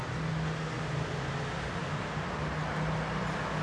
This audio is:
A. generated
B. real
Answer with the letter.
B